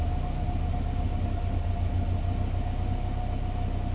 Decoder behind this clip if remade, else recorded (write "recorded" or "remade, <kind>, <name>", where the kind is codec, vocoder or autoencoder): recorded